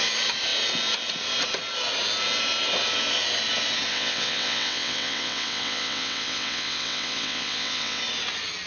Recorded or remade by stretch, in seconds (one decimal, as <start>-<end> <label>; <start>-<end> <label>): 0.0-3.9 recorded; 3.9-8.0 remade; 8.0-8.7 recorded